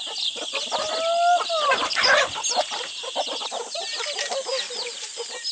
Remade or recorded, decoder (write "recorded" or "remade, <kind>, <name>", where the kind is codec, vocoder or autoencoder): recorded